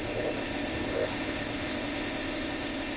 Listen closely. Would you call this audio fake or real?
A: fake